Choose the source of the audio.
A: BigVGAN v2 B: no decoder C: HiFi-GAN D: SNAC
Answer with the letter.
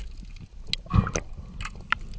B